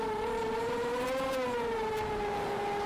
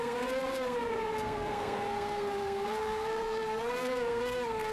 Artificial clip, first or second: second